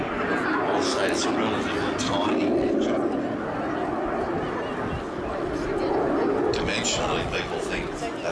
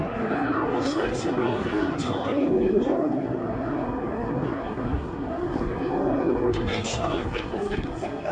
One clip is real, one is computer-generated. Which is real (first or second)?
first